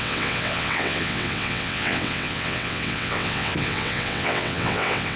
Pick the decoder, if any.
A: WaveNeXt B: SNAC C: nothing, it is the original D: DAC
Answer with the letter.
A